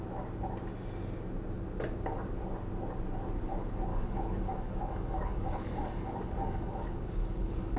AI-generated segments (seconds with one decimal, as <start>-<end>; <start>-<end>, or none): 3.9-7.8

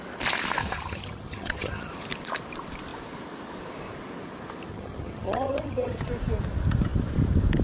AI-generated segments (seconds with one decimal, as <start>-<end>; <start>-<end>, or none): 0.6-1.9; 4.7-6.1

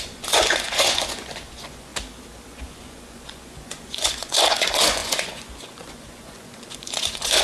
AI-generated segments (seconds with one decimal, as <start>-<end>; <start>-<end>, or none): 0.0-1.9; 2.5-7.4

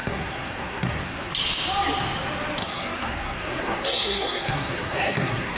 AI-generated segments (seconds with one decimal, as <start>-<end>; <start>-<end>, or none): 0.0-1.3; 2.6-5.6

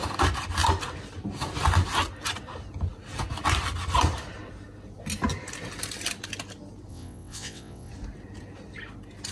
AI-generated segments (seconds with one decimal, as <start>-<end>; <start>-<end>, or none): 6.9-7.9

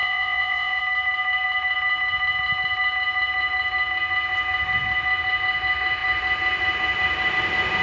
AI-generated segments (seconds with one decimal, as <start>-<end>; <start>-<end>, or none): 0.0-0.8

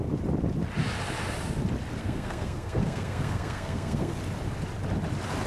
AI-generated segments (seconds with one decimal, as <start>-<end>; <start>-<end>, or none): 2.0-4.2